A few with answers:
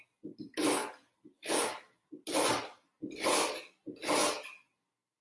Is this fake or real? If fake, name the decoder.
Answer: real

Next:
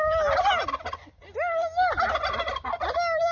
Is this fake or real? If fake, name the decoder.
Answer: real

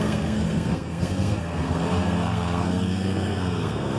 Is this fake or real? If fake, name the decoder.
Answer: fake, codec, SNAC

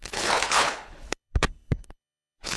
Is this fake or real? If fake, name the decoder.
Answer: fake, codec, HILCodec